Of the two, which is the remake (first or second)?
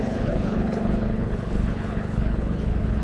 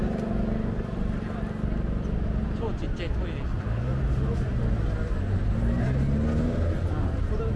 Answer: first